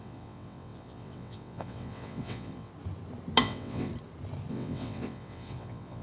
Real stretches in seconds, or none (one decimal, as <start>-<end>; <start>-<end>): 2.7-3.4; 3.9-4.5